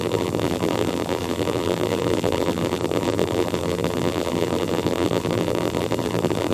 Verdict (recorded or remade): remade